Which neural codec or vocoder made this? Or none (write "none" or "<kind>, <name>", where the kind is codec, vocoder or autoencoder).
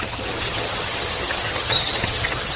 vocoder, HiFi-GAN